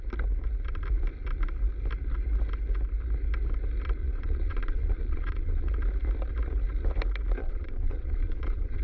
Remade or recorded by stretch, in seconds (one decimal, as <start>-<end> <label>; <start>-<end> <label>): 0.0-4.0 recorded; 4.0-5.7 remade; 5.7-7.4 recorded; 7.4-8.8 remade